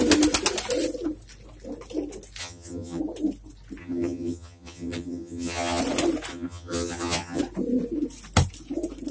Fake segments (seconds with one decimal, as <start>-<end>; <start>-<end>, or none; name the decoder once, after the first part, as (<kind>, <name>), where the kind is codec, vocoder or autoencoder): 2.4-3.0 (vocoder, HiFi-GAN); 3.8-5.8; 6.3-7.4